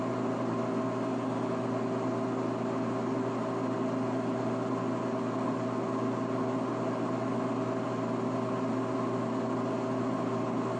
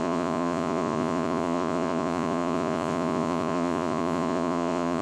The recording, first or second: first